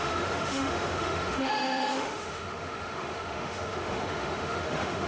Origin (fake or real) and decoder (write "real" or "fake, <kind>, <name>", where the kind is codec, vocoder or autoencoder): fake, autoencoder, DAC-VAE